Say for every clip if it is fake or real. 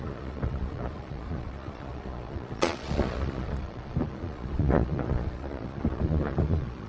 fake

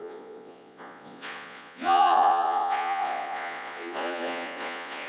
fake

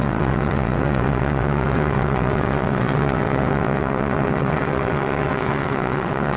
fake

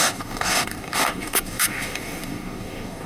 fake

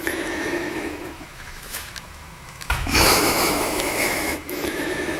fake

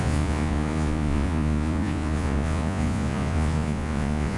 fake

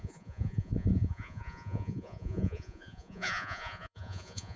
fake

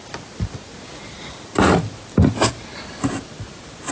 real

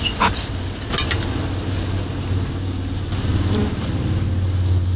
fake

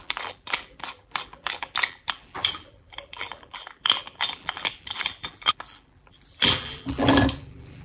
fake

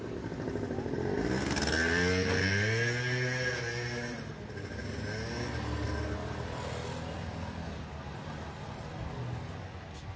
real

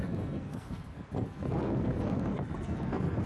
fake